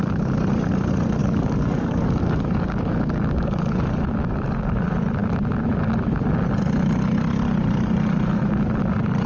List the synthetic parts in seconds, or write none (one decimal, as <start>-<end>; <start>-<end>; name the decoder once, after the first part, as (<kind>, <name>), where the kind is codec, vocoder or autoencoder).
1.2-3.8 (codec, DAC); 4.2-4.8